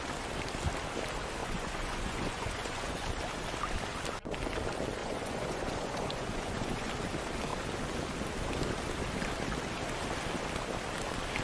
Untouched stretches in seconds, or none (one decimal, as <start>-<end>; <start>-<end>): 0.0-1.4; 3.1-5.0; 6.9-11.4